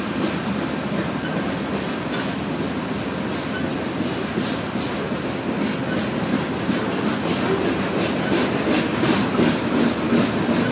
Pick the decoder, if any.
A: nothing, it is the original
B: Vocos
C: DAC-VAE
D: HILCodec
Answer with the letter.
A